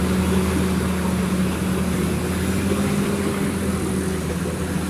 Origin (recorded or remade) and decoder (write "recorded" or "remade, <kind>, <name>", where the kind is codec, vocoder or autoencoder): recorded